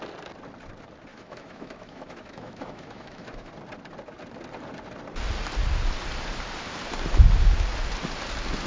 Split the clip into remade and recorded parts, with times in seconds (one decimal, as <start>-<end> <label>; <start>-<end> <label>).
0.0-1.1 recorded; 1.1-3.5 remade; 3.5-8.7 recorded